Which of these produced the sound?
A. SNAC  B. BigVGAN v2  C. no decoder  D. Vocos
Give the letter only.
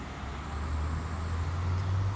C